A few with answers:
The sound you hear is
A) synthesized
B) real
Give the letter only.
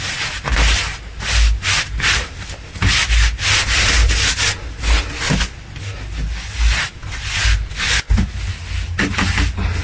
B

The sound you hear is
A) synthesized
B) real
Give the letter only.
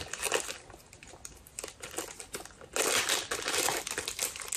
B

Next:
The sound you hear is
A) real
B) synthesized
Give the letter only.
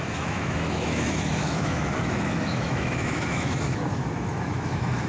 B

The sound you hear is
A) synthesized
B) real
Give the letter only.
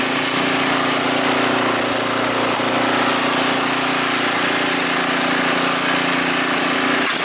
B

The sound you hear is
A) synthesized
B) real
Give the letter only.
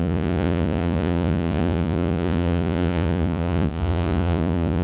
A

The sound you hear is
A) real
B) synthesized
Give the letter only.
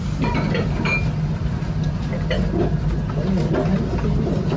A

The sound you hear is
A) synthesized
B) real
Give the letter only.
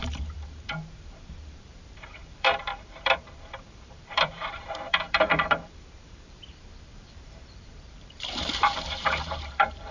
A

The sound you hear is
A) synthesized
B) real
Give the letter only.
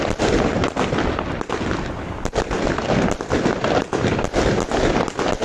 B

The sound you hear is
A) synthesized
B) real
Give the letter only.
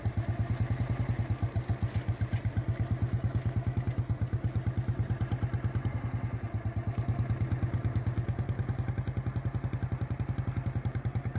B